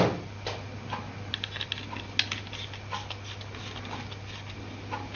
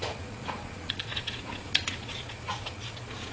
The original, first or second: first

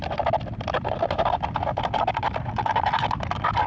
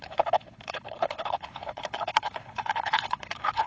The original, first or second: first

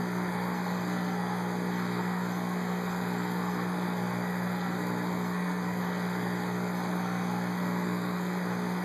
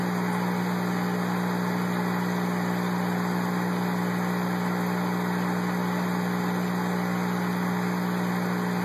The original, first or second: second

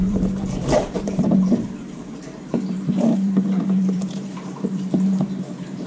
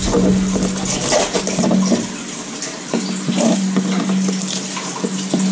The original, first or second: second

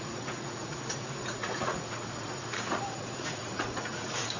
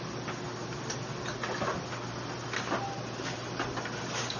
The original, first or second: second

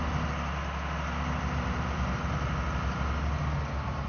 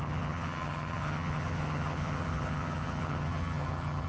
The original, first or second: first